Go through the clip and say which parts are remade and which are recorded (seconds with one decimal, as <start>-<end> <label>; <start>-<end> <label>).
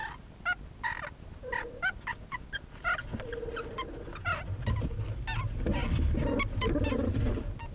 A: 0.0-7.7 recorded